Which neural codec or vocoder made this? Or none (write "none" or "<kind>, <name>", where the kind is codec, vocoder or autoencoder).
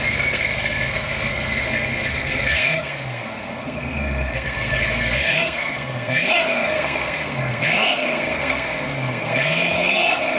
codec, SNAC